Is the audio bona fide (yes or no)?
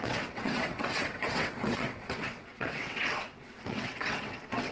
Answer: no